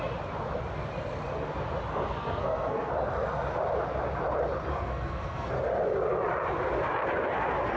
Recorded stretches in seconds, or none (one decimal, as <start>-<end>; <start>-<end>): 0.0-1.9; 2.9-4.7; 5.5-7.8